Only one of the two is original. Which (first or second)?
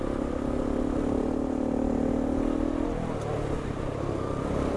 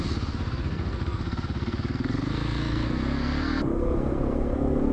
first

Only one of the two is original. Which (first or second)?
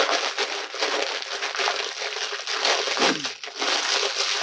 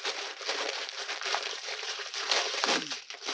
first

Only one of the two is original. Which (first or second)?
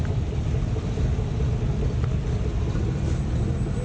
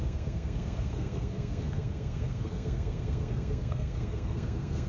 first